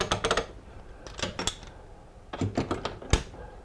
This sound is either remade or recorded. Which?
recorded